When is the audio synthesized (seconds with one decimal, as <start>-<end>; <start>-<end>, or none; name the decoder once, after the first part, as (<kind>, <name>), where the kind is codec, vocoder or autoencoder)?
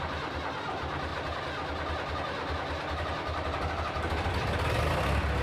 none